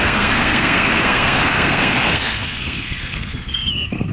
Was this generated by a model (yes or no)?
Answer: yes